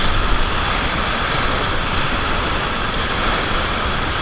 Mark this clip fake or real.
real